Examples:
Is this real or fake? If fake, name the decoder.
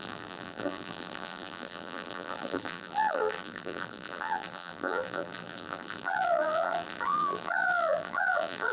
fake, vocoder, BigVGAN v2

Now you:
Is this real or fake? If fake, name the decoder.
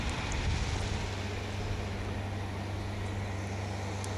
real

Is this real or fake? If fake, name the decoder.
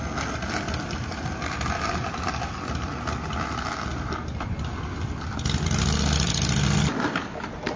real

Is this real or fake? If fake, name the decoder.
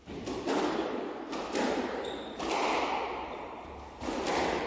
real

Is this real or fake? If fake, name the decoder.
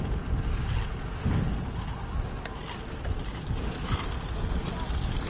real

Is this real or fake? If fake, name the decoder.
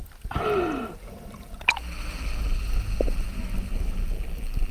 real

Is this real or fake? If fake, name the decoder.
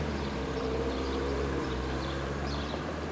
fake, vocoder, BigVGAN v2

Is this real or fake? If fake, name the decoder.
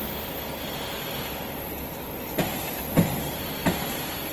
real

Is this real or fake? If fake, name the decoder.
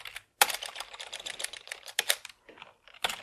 real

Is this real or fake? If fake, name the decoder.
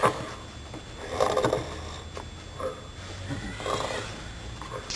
real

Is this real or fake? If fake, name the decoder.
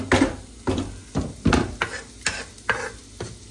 real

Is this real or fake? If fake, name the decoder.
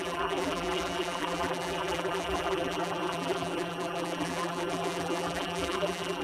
fake, vocoder, BigVGAN v2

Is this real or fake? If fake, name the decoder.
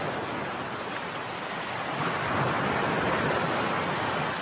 real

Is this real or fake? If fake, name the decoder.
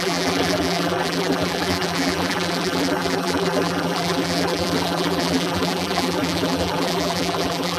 fake, vocoder, BigVGAN v2